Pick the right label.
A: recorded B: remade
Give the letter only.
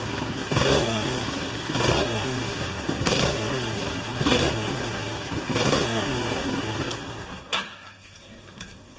B